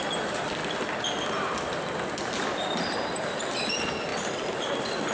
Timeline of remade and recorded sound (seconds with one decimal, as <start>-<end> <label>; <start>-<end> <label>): 0.0-5.1 recorded